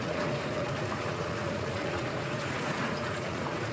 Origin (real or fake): fake